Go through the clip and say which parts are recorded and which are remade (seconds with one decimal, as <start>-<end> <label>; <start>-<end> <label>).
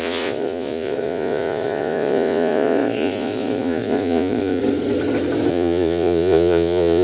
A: 0.0-4.6 remade; 4.6-5.5 recorded; 5.5-7.0 remade